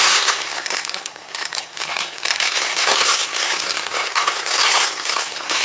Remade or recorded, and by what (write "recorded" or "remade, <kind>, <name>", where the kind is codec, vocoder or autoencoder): remade, codec, SNAC